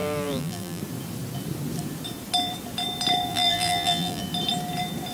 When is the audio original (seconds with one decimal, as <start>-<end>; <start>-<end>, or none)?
0.8-3.3; 4.2-5.1